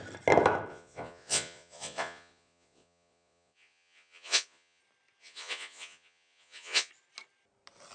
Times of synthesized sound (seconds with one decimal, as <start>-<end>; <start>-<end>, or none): 0.7-4.8; 5.2-6.9